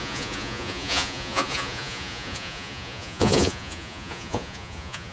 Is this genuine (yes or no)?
no